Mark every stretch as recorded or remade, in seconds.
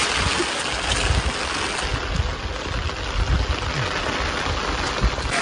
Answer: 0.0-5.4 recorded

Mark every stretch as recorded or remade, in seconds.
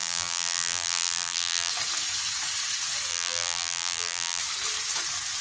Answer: 0.0-1.7 remade; 1.7-3.1 recorded; 3.1-4.4 remade; 4.4-5.4 recorded